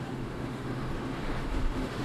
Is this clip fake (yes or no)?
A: yes